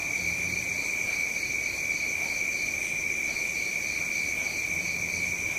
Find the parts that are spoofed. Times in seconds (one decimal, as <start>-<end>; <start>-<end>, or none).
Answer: none